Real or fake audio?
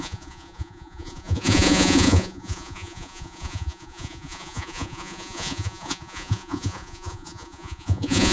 fake